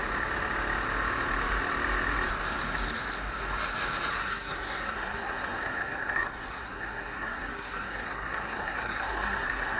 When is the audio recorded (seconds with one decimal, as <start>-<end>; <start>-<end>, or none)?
0.0-4.1